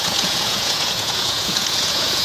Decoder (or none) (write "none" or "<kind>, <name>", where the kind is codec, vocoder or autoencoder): vocoder, Vocos